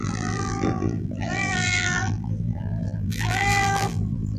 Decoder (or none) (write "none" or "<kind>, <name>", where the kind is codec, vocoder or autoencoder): vocoder, BigVGAN v2